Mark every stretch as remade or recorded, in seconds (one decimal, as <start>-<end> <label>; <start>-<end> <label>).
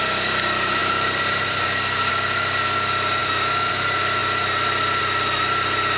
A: 0.0-0.8 recorded; 0.8-2.1 remade; 2.1-3.2 recorded; 3.2-3.7 remade; 3.7-6.0 recorded